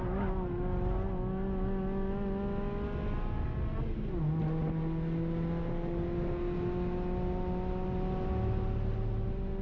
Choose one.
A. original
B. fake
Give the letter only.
A